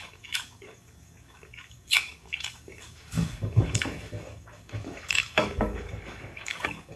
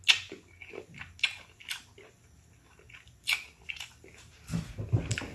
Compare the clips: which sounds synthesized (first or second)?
first